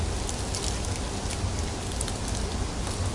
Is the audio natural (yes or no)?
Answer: yes